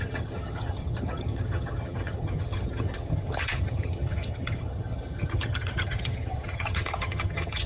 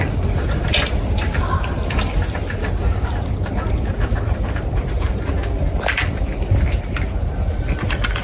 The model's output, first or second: first